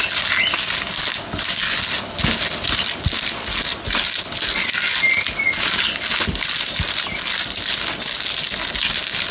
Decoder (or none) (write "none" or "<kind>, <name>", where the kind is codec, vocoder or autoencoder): none